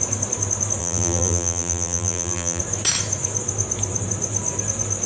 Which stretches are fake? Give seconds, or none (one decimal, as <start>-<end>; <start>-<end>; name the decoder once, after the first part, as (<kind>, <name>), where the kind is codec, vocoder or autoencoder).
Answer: 0.8-2.6 (vocoder, BigVGAN v2)